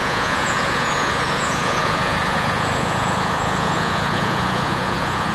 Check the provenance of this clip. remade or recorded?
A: remade